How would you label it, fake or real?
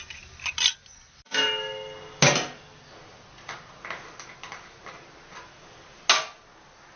real